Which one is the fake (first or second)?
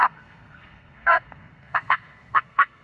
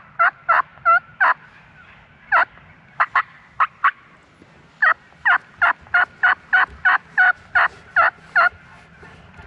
first